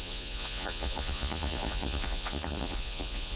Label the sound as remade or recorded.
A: remade